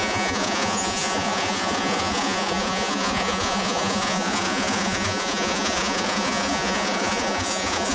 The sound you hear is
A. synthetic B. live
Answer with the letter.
A